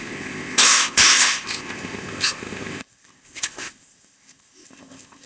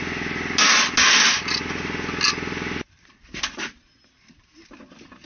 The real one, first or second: second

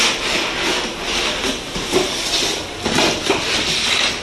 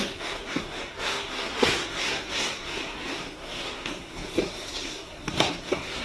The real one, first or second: first